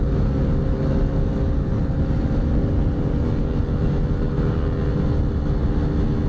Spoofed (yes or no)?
no